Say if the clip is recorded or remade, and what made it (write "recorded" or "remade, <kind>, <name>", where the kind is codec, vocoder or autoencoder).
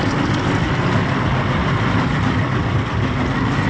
recorded